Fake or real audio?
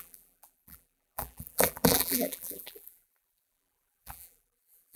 fake